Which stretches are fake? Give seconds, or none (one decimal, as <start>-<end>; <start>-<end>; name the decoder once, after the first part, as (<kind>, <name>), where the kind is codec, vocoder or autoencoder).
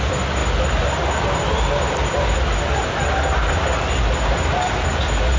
0.4-3.6 (vocoder, BigVGAN v2)